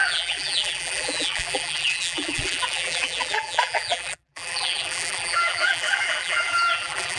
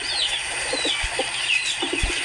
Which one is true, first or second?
second